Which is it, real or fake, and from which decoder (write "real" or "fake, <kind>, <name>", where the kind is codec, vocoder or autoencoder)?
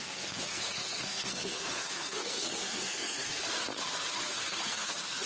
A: fake, codec, SNAC